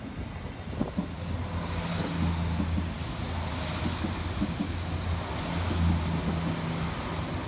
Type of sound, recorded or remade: recorded